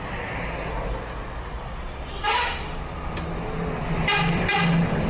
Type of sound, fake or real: real